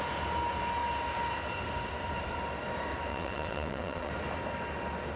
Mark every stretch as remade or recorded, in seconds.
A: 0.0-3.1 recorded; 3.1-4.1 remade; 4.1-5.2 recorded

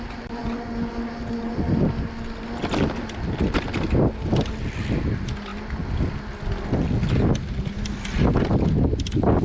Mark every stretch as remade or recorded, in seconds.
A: 0.0-9.4 recorded

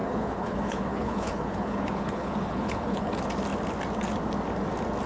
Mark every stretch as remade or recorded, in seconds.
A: 0.0-3.1 remade; 3.1-5.1 recorded

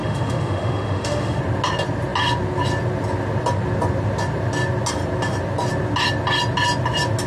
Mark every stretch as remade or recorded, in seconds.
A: 0.0-1.4 remade; 1.4-7.3 recorded

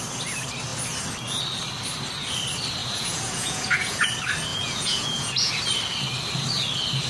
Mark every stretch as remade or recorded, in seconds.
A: 0.0-2.8 recorded; 2.8-4.1 remade; 4.1-4.5 recorded; 4.5-5.5 remade; 5.5-7.1 recorded